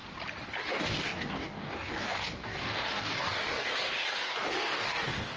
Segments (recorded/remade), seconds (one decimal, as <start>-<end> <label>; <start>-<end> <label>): 0.0-0.7 recorded; 0.7-5.4 remade

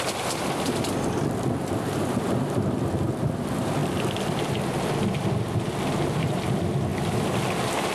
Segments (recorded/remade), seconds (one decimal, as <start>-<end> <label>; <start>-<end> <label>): 0.0-7.9 recorded